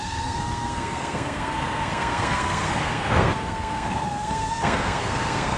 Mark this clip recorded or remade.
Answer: remade